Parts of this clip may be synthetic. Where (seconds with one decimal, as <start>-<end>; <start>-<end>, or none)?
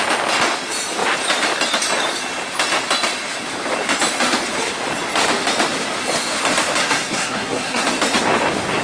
6.8-7.9